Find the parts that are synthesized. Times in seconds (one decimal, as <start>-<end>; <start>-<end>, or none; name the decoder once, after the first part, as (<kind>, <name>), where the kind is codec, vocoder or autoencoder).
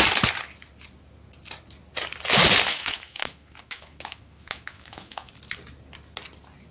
2.7-5.3 (autoencoder, DAC-VAE)